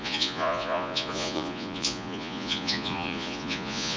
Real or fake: fake